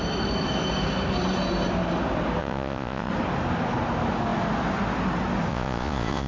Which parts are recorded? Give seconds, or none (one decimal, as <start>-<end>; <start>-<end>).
0.0-2.4; 3.1-5.5